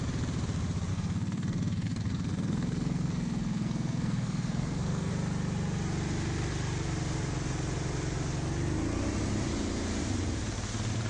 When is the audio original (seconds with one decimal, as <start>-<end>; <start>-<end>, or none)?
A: 0.0-0.9; 5.1-11.1